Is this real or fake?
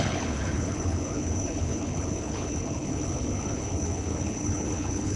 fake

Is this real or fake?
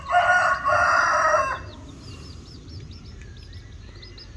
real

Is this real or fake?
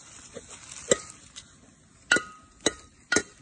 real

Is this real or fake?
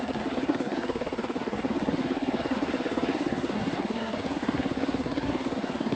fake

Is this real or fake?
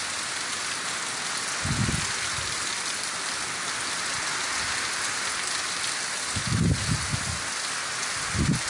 real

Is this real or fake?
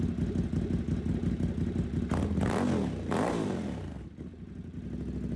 real